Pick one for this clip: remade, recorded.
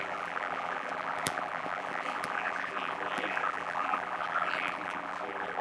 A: remade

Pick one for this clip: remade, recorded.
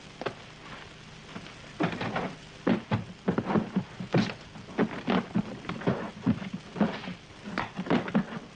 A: recorded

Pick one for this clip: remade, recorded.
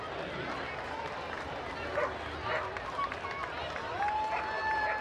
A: recorded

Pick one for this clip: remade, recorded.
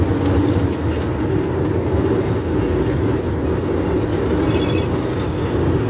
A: recorded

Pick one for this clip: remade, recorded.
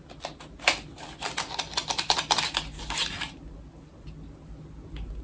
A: recorded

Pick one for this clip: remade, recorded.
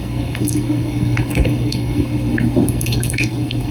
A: remade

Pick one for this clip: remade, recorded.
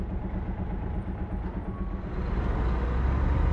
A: recorded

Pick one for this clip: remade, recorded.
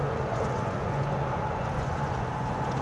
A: remade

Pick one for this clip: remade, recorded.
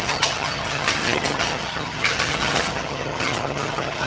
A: remade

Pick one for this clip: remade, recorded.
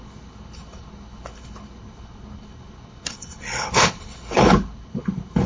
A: remade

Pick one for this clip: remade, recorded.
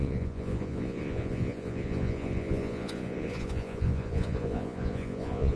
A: remade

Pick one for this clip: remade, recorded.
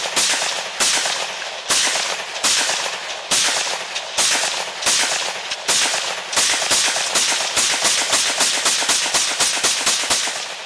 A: recorded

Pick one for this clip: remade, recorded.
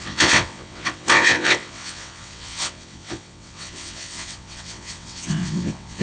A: remade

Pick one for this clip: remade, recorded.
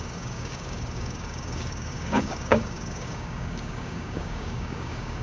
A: remade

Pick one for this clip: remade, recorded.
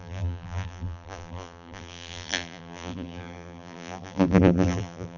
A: remade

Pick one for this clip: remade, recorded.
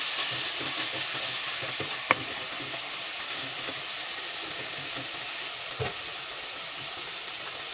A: recorded